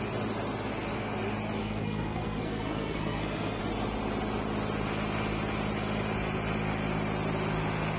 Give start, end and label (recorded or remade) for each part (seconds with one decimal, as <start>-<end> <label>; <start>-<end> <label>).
0.0-1.6 recorded; 1.6-3.6 remade; 3.6-8.0 recorded

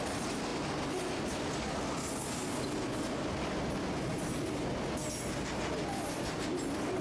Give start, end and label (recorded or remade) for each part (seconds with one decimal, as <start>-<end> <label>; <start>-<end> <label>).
0.0-7.0 recorded

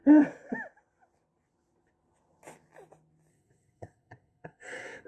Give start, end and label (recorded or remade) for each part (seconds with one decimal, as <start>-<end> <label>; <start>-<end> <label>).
0.0-3.3 recorded; 3.3-5.1 remade

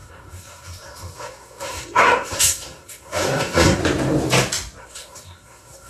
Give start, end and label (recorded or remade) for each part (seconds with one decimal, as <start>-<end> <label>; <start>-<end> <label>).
0.0-3.8 remade; 3.8-4.8 recorded; 4.8-5.9 remade

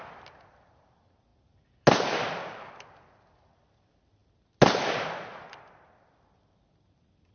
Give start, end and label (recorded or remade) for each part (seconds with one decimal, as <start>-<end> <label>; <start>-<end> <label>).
0.0-7.3 recorded

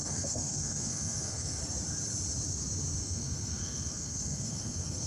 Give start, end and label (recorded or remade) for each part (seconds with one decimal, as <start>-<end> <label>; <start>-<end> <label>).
0.0-1.6 remade; 1.6-3.0 recorded; 3.0-5.1 remade

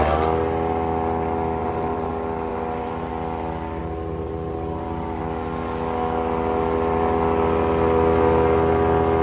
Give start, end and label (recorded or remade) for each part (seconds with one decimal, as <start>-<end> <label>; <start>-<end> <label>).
0.0-1.6 recorded; 1.6-2.1 remade; 2.1-2.5 recorded; 2.5-3.1 remade; 3.1-3.8 recorded; 3.8-5.2 remade; 5.2-9.2 recorded